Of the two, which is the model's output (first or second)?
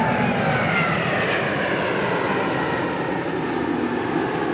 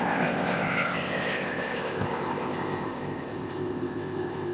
second